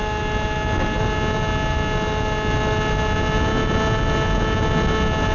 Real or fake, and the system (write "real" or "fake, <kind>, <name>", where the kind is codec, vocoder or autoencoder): real